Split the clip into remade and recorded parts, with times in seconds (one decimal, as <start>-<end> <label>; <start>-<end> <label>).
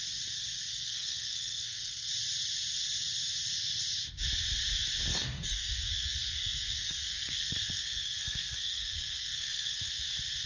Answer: 0.0-0.7 recorded; 0.7-2.1 remade; 2.1-5.1 recorded; 5.1-9.8 remade; 9.8-10.5 recorded